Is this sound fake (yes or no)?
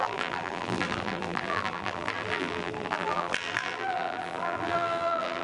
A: yes